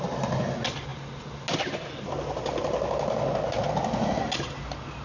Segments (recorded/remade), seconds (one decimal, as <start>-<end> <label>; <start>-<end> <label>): 0.0-5.0 recorded